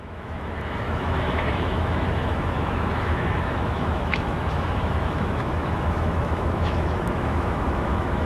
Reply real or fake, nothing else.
fake